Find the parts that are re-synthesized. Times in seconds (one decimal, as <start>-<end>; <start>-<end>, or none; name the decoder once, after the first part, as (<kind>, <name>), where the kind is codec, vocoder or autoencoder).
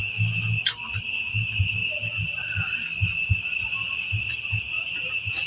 none